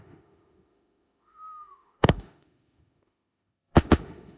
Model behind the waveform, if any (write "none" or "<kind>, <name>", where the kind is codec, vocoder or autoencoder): autoencoder, DAC-VAE